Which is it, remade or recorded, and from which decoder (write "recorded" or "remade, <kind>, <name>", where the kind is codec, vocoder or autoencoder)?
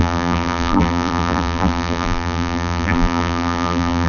remade, vocoder, BigVGAN v2